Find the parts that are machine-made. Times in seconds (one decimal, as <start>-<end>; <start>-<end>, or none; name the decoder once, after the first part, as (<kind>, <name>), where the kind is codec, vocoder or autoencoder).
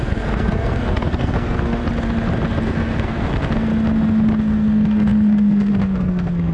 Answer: 0.0-1.8 (codec, SNAC); 2.6-3.7; 4.4-6.5